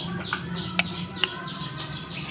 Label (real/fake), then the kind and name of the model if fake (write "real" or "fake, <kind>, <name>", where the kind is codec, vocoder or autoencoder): real